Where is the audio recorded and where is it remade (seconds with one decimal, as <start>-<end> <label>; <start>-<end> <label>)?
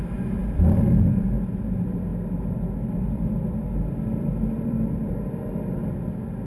0.0-0.4 recorded; 0.4-0.9 remade; 0.9-2.1 recorded; 2.1-5.1 remade; 5.1-6.5 recorded